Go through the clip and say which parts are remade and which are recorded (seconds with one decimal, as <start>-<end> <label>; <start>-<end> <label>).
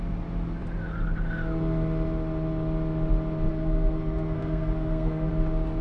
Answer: 0.0-3.5 recorded; 3.5-5.3 remade; 5.3-5.8 recorded